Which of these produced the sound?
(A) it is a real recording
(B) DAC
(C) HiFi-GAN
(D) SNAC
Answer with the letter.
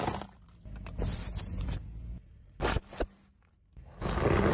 A